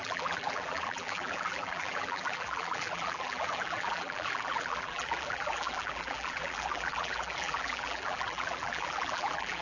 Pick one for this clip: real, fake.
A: fake